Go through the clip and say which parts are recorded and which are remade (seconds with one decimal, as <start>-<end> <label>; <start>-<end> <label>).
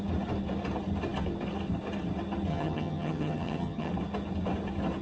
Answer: 0.0-2.5 recorded; 2.5-3.9 remade; 3.9-5.0 recorded